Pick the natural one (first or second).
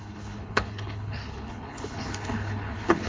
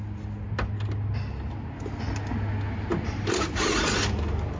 second